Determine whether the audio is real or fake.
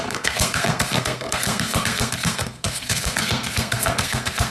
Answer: fake